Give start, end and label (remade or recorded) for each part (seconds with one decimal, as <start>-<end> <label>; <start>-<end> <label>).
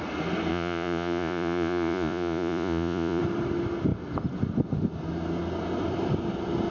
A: 0.0-0.5 recorded; 0.5-3.2 remade; 3.2-6.7 recorded